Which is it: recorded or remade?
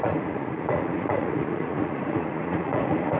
remade